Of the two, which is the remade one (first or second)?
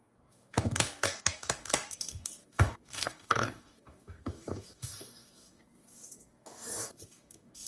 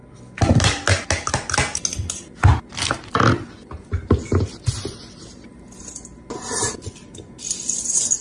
first